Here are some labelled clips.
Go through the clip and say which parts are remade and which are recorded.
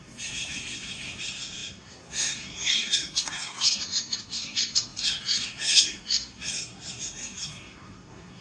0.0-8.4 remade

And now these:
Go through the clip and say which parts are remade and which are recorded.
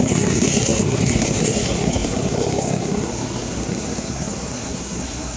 0.0-5.4 remade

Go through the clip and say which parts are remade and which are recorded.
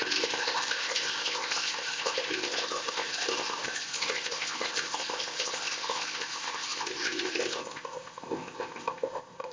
0.0-9.5 remade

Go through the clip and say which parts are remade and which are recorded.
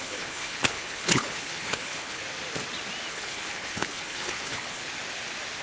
0.0-2.2 remade; 2.2-3.1 recorded; 3.1-4.8 remade; 4.8-5.6 recorded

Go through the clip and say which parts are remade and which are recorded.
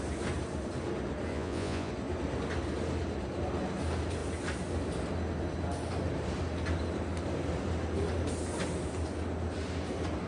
0.0-1.3 recorded; 1.3-1.9 remade; 1.9-10.3 recorded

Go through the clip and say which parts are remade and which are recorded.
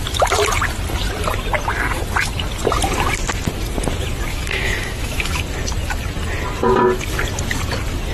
0.0-4.3 recorded; 4.3-5.4 remade; 5.4-8.1 recorded